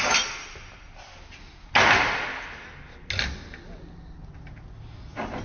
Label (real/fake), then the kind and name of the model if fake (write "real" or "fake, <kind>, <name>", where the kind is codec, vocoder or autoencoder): real